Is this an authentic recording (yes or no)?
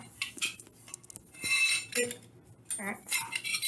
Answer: yes